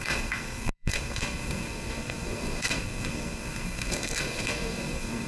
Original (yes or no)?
no